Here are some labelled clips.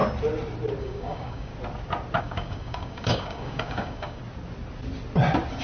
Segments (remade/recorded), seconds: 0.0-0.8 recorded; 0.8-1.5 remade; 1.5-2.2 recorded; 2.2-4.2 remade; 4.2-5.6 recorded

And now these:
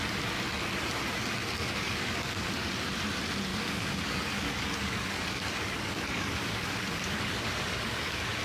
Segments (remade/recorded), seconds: 0.0-1.4 recorded; 1.4-2.7 remade; 2.7-3.5 recorded; 3.5-8.4 remade

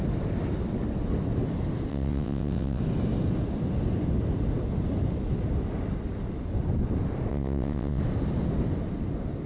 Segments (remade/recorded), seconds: 0.0-1.9 recorded; 1.9-2.8 remade; 2.8-7.3 recorded; 7.3-8.0 remade; 8.0-9.5 recorded

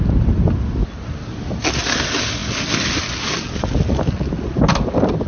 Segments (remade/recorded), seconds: 0.0-5.3 recorded

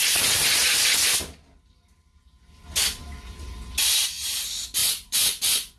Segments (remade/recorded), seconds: 0.0-4.8 recorded; 4.8-5.8 remade